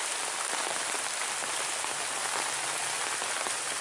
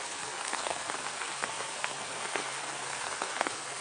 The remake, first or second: second